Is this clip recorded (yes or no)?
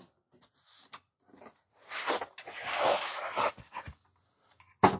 yes